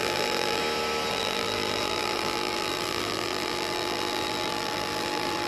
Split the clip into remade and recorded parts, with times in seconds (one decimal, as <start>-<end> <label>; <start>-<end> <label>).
0.0-0.6 remade; 0.6-1.1 recorded; 1.1-5.5 remade